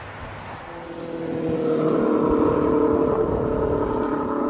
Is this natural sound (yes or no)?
yes